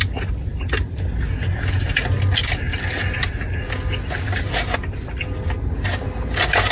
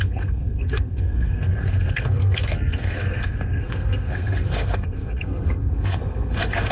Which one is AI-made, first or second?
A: second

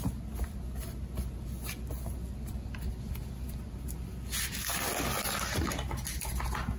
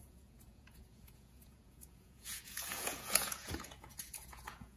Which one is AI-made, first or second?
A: second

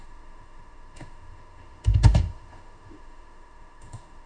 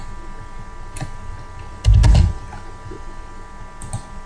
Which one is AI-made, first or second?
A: first